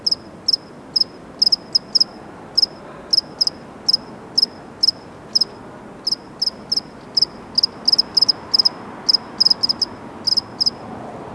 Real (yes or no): yes